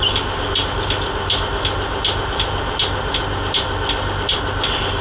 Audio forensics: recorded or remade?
recorded